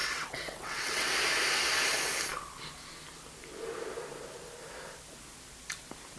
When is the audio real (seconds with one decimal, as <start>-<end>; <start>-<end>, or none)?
1.1-6.2